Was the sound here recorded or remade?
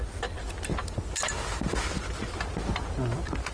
recorded